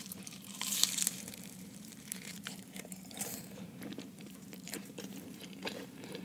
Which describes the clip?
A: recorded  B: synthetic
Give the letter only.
B